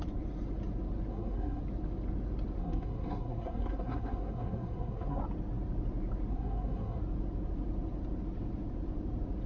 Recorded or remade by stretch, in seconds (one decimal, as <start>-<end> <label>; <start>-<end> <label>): 0.0-1.1 recorded; 1.1-1.6 remade; 1.6-2.6 recorded; 2.6-5.2 remade; 5.2-6.3 recorded; 6.3-7.0 remade; 7.0-9.5 recorded